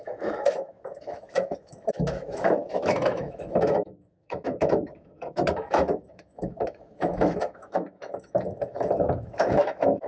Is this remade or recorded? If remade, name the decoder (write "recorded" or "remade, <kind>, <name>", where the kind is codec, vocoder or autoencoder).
remade, autoencoder, DAC-VAE